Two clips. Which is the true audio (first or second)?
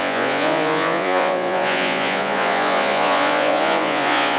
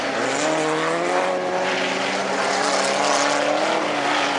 second